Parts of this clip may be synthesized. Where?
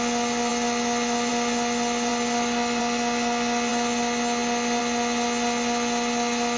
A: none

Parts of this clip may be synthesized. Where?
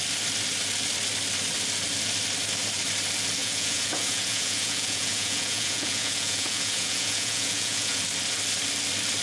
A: 3.4-8.0 (vocoder, Vocos)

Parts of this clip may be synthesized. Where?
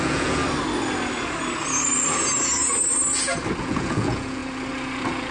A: 0.0-0.4 (vocoder, Vocos); 3.6-4.4